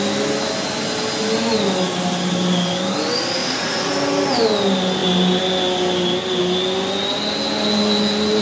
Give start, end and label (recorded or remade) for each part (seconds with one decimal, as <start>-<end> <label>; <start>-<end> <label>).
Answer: 0.0-3.4 recorded; 3.4-3.9 remade; 3.9-8.4 recorded